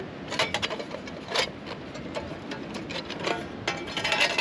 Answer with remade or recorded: recorded